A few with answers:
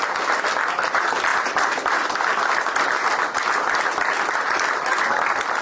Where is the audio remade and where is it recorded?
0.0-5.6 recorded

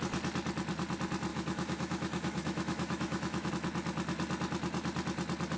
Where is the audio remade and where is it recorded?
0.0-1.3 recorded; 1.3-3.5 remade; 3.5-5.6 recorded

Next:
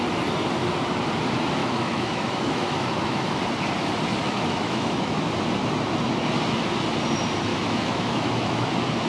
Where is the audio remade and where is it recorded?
0.0-1.6 recorded; 1.6-3.4 remade; 3.4-4.2 recorded; 4.2-5.2 remade; 5.2-7.5 recorded; 7.5-8.7 remade; 8.7-9.1 recorded

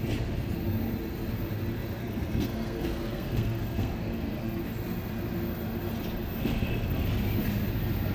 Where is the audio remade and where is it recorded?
0.0-2.0 recorded; 2.0-4.6 remade; 4.6-6.4 recorded; 6.4-7.1 remade; 7.1-8.1 recorded

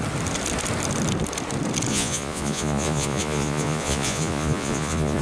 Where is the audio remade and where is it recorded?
0.0-1.9 recorded; 1.9-5.2 remade

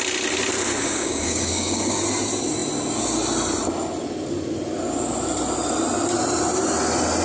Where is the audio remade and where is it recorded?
0.0-0.8 recorded; 0.8-2.0 remade; 2.0-7.2 recorded

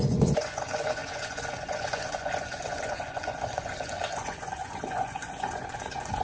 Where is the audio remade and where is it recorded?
0.0-6.2 remade